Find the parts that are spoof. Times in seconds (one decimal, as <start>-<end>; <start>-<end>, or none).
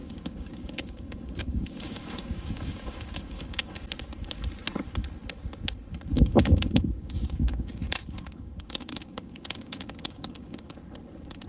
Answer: 0.0-3.8; 6.1-10.7